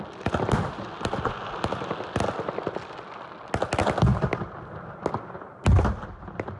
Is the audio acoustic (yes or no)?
yes